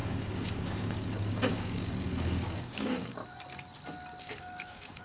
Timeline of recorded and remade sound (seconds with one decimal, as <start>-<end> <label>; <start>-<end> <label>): 0.0-3.2 remade; 3.2-4.2 recorded; 4.2-5.0 remade